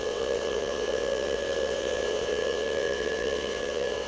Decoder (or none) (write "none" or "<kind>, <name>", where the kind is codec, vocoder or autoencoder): vocoder, WaveNeXt